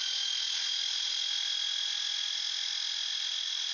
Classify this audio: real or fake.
real